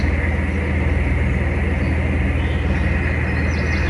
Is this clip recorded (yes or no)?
yes